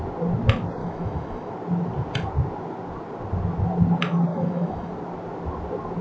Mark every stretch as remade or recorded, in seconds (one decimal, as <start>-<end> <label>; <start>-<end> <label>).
0.0-0.8 recorded; 0.8-1.5 remade; 1.5-4.3 recorded; 4.3-4.9 remade; 4.9-6.0 recorded